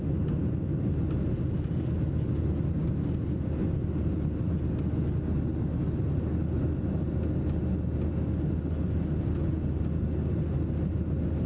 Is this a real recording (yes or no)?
yes